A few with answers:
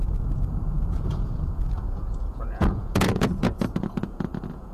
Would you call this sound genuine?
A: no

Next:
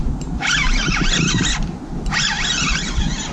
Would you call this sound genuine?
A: yes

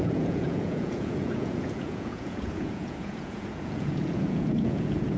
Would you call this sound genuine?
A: no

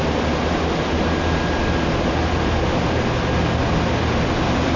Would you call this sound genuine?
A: yes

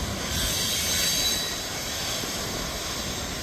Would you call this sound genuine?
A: yes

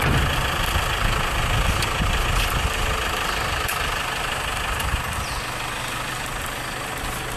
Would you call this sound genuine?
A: yes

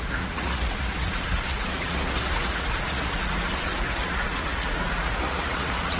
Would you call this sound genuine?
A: no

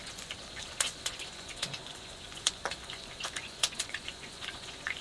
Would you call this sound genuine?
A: no